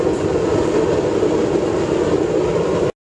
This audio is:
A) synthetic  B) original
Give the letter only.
B